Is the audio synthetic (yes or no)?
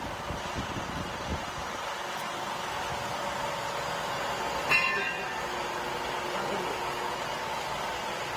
no